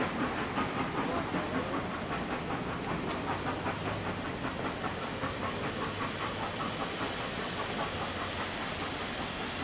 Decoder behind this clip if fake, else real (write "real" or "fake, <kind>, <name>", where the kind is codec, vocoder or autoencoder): real